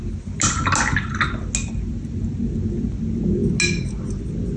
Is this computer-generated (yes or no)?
no